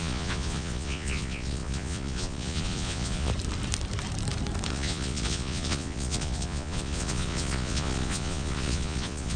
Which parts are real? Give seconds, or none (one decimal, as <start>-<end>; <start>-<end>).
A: 3.3-4.7